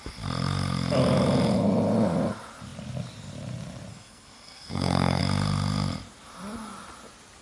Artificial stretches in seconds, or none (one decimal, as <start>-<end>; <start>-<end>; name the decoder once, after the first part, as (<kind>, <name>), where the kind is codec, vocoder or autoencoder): 3.9-5.2 (codec, SNAC)